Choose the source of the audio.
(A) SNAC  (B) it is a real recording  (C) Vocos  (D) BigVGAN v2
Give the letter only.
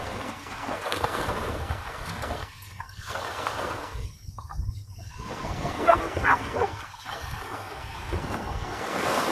A